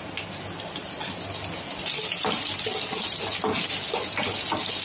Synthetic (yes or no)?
no